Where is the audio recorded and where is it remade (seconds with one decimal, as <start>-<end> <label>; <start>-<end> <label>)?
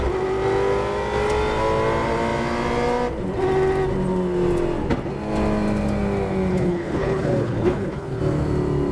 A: 0.0-6.5 recorded; 6.5-8.2 remade; 8.2-8.9 recorded